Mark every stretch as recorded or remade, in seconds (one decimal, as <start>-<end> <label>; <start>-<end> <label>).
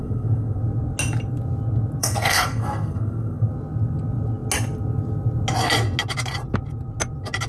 0.0-0.6 remade; 0.6-2.0 recorded; 2.0-3.5 remade; 3.5-7.5 recorded